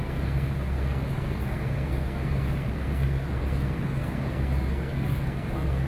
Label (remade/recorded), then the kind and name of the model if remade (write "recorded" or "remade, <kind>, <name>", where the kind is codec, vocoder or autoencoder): remade, codec, SNAC